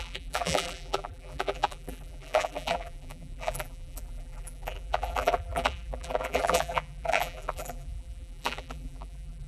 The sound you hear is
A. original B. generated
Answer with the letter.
B